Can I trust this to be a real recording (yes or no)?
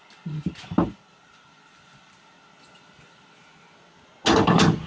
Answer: yes